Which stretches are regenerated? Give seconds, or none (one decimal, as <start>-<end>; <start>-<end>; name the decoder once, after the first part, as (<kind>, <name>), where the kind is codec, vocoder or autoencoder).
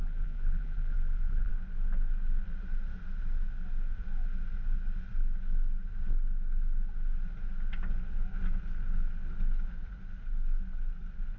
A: 0.0-1.5 (vocoder, BigVGAN v2)